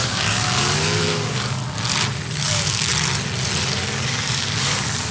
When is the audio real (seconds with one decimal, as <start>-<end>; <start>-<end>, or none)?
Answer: 1.6-2.3; 2.9-3.7